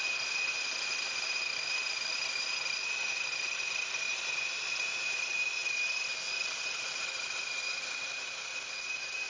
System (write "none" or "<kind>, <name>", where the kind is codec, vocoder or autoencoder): none